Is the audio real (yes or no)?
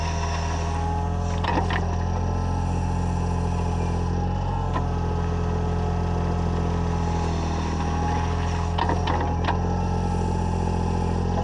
yes